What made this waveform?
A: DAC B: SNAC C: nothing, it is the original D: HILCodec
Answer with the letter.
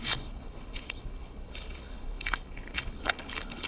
D